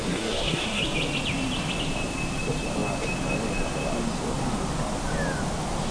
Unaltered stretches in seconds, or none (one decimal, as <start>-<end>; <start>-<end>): 0.8-5.9